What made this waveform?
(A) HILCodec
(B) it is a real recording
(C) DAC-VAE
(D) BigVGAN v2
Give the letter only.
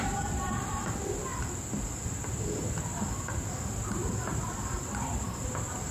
D